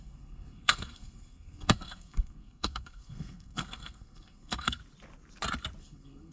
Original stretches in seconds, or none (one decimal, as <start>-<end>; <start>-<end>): 4.8-5.8